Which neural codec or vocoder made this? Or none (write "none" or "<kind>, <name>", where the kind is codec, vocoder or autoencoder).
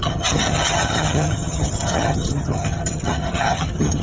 vocoder, HiFi-GAN